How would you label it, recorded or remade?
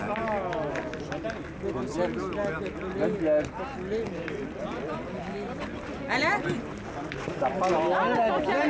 recorded